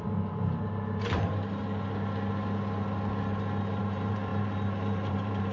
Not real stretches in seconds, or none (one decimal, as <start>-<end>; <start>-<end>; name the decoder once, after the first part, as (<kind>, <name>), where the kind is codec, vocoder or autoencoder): 0.0-1.6 (vocoder, BigVGAN v2); 3.8-5.5